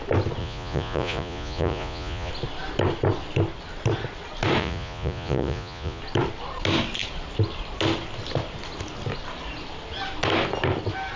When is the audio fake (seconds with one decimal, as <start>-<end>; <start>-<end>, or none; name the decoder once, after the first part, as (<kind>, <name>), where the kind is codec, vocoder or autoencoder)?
0.4-2.3 (vocoder, Vocos); 4.6-6.0